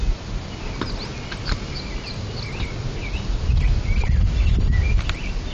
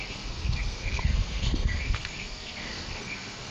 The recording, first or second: first